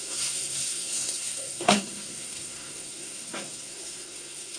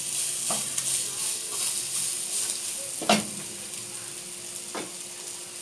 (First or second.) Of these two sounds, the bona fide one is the second